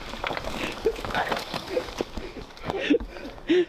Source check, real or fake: fake